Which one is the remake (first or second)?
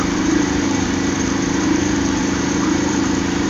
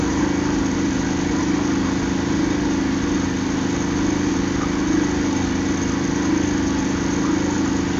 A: first